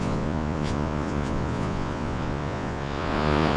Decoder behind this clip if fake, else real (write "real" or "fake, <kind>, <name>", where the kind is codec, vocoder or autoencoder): fake, vocoder, Vocos